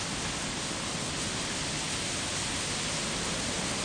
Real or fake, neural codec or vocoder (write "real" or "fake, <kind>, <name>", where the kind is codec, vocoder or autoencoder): real